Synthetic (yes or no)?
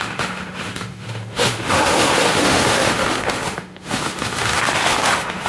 yes